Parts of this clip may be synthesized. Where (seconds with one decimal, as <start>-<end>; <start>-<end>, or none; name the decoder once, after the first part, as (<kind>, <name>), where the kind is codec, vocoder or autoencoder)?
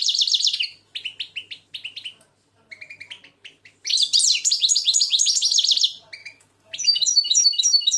6.2-8.0 (autoencoder, DAC-VAE)